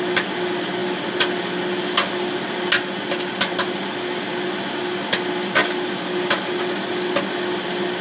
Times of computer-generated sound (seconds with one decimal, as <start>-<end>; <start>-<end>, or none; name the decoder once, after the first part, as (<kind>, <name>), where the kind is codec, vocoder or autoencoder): none